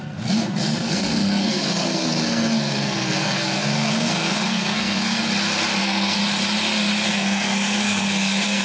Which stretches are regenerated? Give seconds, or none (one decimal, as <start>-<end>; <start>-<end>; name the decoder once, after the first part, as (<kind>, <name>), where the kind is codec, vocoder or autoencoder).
0.0-5.2 (codec, SNAC); 5.8-6.2; 7.1-8.6

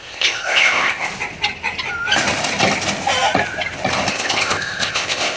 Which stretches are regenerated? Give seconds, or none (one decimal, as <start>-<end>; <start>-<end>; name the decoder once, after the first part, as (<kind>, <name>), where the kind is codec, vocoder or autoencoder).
0.0-1.1 (codec, ZipCodec); 4.1-5.4

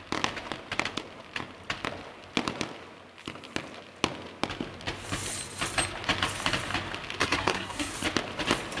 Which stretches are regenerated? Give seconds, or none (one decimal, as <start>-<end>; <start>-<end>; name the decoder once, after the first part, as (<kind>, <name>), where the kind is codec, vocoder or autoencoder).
7.2-7.9 (codec, SNAC)

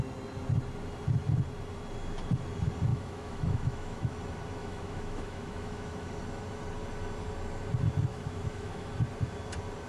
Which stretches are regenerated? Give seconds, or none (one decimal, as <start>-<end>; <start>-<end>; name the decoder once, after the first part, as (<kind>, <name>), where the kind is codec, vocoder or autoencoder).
2.9-4.1 (autoencoder, DAC-VAE); 4.6-6.2; 8.1-8.9

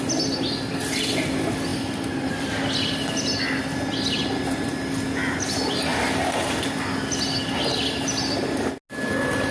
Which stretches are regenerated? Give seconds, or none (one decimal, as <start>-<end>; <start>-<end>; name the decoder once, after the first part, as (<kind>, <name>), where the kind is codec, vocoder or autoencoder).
1.7-2.7 (vocoder, BigVGAN v2)

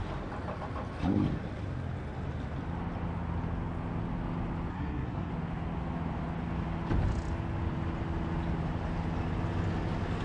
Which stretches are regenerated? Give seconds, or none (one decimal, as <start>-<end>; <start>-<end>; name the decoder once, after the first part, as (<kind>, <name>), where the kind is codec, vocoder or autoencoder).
4.7-5.3 (codec, SNAC)